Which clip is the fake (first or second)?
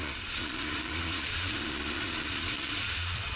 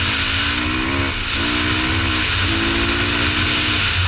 first